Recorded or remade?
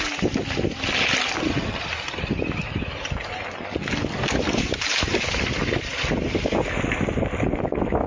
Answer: recorded